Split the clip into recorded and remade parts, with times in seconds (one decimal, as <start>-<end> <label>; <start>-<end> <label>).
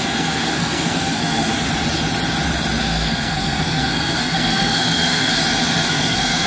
0.0-1.5 remade; 1.5-2.8 recorded; 2.8-5.3 remade; 5.3-5.9 recorded; 5.9-6.5 remade